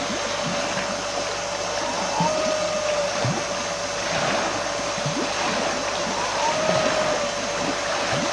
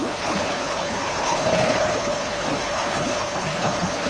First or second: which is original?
first